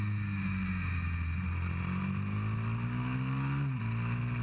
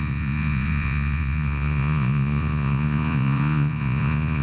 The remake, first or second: second